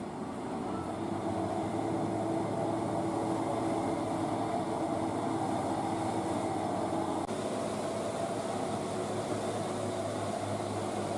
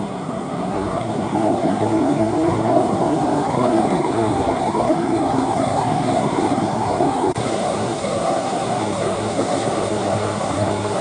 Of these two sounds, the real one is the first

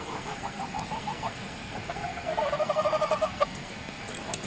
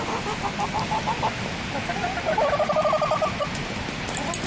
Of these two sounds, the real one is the second